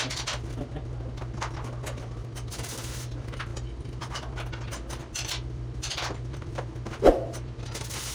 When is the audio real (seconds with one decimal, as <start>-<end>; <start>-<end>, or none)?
0.0-3.5; 4.6-5.0; 6.6-8.1